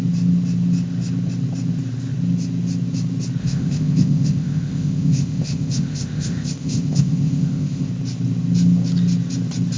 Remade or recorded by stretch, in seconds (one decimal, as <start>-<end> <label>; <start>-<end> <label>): 0.0-3.4 recorded; 3.4-7.9 remade; 7.9-9.8 recorded